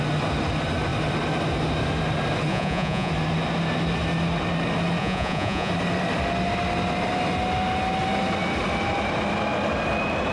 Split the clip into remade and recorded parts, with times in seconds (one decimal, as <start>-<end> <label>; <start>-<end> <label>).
0.0-2.5 recorded; 2.5-3.1 remade; 3.1-5.0 recorded; 5.0-5.7 remade; 5.7-10.3 recorded